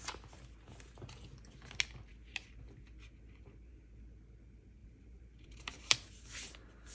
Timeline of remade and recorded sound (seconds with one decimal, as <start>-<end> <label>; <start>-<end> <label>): 0.0-4.8 recorded; 4.8-5.8 remade; 5.8-6.9 recorded